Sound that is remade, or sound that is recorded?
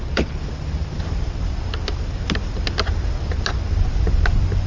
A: recorded